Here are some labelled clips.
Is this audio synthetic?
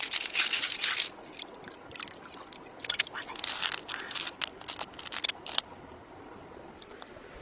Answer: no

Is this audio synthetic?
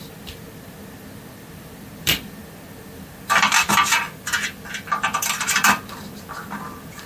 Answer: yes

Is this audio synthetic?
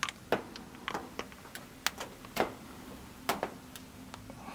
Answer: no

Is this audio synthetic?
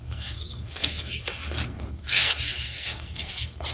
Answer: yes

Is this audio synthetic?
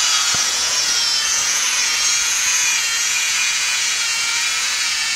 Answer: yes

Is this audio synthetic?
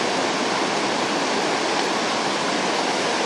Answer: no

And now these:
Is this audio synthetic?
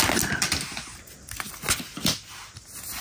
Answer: no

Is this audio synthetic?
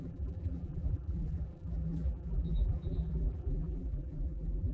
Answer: yes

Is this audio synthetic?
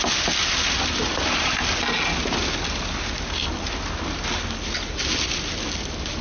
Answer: no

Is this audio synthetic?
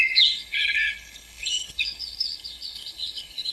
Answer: yes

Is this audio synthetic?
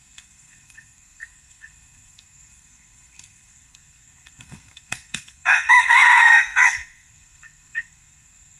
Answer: yes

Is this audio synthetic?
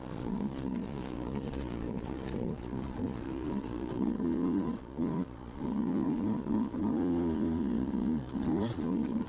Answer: yes